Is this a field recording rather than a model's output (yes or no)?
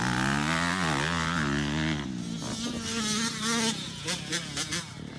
yes